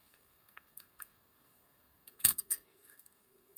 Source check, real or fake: fake